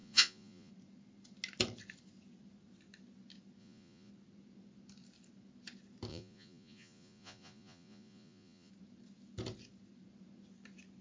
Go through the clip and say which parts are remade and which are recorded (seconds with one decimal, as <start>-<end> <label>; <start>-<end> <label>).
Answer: 0.0-0.7 remade; 0.7-3.6 recorded; 3.6-4.1 remade; 4.1-6.1 recorded; 6.1-8.7 remade; 8.7-11.0 recorded

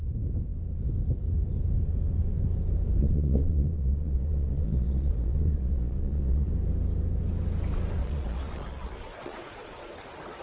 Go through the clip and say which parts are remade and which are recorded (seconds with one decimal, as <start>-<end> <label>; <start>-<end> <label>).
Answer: 0.0-3.0 recorded; 3.0-6.5 remade; 6.5-8.0 recorded; 8.0-9.9 remade; 9.9-10.4 recorded

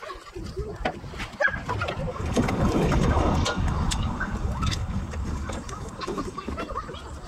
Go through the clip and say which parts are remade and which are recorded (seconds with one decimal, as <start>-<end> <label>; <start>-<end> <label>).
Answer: 0.0-2.1 recorded; 2.1-6.5 remade; 6.5-7.3 recorded

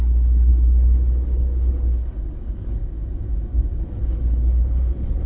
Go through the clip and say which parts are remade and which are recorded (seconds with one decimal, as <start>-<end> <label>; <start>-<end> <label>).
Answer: 0.0-2.8 remade; 2.8-3.8 recorded; 3.8-5.3 remade

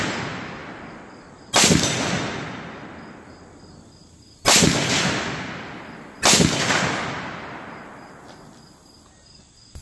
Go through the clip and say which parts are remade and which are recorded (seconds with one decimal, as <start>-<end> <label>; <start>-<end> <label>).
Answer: 0.0-9.8 recorded

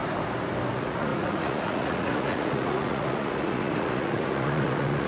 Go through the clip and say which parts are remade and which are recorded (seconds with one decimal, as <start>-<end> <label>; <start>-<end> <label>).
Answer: 0.0-0.7 recorded; 0.7-5.1 remade